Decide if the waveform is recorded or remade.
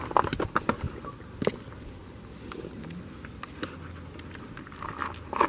recorded